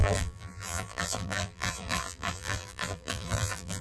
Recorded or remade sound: remade